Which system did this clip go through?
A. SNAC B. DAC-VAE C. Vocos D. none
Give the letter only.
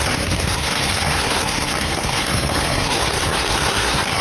A